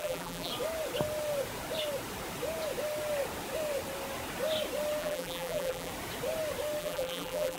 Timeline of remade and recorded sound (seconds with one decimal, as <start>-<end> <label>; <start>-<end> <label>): 0.0-0.5 remade; 0.5-5.0 recorded; 5.0-5.9 remade; 5.9-6.8 recorded; 6.8-7.6 remade